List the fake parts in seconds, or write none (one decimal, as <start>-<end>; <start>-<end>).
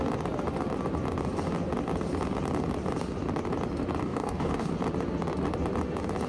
4.0-4.7